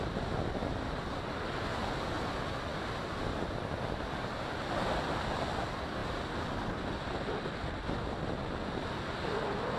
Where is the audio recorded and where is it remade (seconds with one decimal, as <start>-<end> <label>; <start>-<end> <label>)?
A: 0.0-9.8 recorded